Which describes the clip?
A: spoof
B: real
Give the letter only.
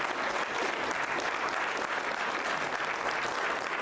B